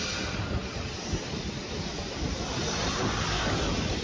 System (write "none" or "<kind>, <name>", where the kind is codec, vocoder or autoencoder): vocoder, BigVGAN v2